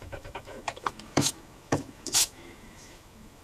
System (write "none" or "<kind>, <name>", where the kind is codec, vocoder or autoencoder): autoencoder, DAC-VAE